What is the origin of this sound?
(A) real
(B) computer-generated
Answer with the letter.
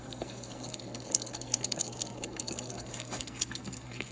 B